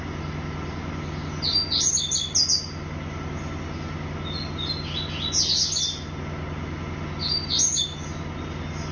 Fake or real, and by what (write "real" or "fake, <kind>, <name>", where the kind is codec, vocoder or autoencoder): real